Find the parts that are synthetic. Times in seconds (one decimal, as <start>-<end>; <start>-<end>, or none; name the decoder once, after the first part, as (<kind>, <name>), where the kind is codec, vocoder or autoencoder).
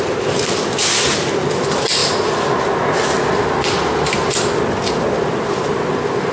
none